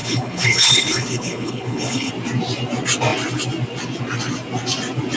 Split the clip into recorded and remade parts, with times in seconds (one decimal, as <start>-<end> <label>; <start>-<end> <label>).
0.0-2.1 remade; 2.1-5.2 recorded